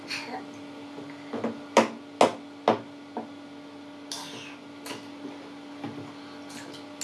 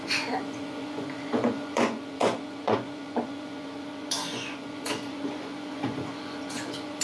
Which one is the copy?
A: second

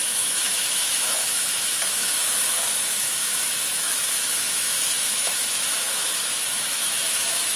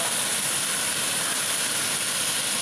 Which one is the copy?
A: first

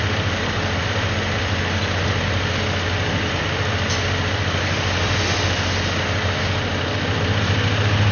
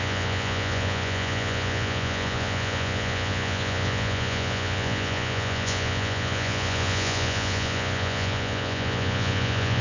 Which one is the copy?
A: second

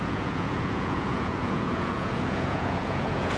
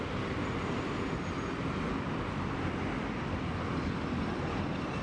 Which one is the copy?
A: first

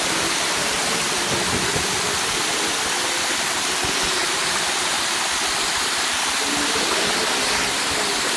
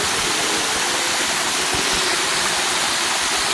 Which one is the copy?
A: first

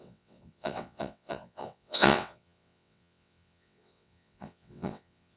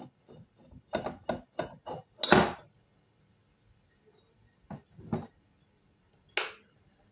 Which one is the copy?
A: first